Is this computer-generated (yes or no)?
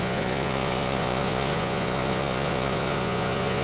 yes